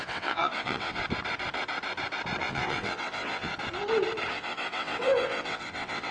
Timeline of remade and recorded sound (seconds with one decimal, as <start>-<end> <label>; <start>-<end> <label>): 0.0-1.0 remade; 1.0-2.4 recorded; 2.4-3.5 remade; 3.5-4.3 recorded; 4.3-6.1 remade